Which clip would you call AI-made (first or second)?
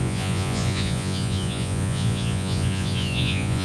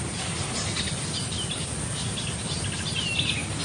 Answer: first